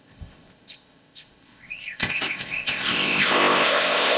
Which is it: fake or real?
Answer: fake